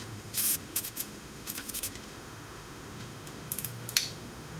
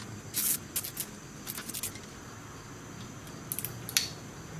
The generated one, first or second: first